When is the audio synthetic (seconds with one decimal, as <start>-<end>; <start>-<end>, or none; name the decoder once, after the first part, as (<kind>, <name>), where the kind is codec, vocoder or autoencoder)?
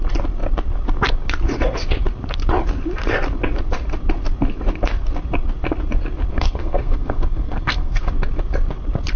6.3-8.1 (codec, SNAC)